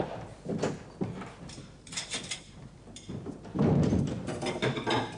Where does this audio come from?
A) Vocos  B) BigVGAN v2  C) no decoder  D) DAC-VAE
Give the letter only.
C